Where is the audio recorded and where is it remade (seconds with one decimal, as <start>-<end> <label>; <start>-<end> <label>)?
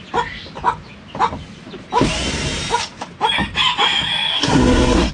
0.0-4.3 recorded; 4.3-5.1 remade